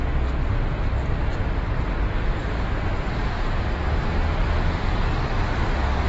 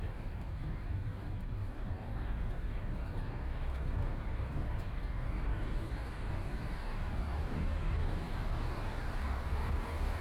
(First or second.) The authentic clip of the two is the first